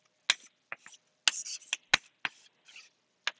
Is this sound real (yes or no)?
yes